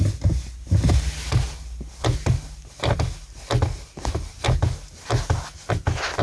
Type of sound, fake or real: real